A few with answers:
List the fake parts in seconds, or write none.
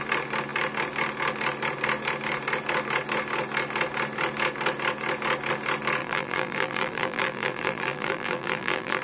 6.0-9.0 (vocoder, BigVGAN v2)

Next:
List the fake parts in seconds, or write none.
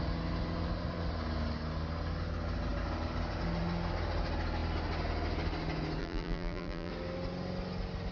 6.0-6.9 (vocoder, BigVGAN v2)